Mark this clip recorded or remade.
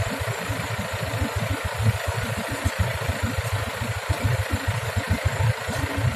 remade